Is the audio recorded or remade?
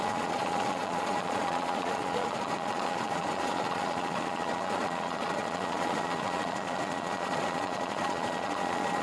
remade